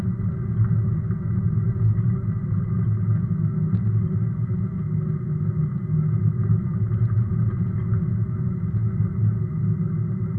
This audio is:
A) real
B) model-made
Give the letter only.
A